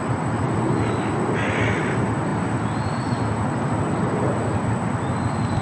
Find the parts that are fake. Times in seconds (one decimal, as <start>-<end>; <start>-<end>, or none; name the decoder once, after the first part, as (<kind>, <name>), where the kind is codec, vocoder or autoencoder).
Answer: none